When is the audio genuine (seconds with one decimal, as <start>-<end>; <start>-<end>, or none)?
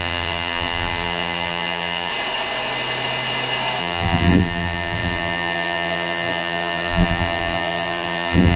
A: 2.1-3.8